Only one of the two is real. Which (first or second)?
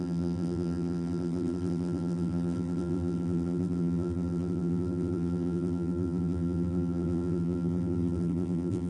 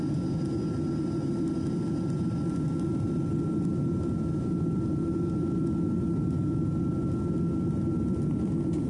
second